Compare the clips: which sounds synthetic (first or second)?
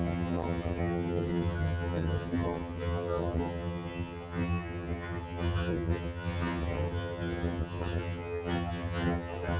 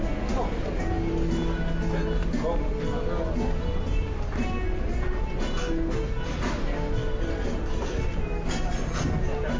first